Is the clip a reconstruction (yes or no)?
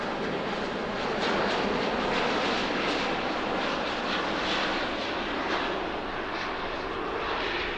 no